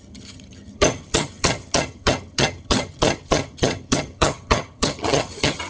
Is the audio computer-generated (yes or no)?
yes